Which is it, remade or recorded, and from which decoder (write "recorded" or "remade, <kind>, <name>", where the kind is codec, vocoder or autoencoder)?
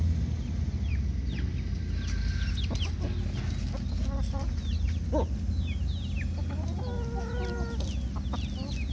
recorded